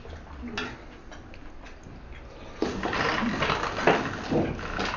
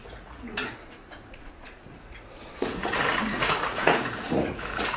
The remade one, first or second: second